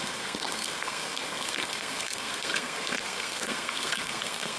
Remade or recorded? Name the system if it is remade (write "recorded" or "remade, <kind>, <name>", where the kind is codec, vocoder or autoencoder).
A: remade, codec, SNAC